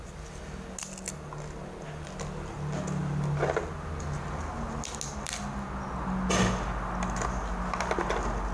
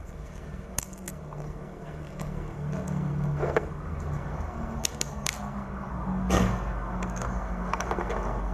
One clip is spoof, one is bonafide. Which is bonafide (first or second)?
first